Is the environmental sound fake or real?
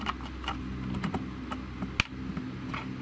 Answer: real